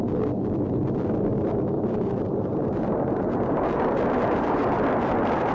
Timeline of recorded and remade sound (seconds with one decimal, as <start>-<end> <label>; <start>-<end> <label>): 0.0-1.3 recorded; 1.3-4.6 remade; 4.6-5.5 recorded